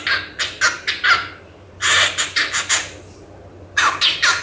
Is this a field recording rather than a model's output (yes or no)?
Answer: yes